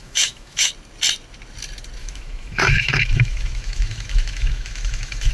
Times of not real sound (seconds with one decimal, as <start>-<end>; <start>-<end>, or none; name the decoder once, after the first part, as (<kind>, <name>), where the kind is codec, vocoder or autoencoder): 0.0-0.7 (autoencoder, DAC-VAE); 2.0-5.3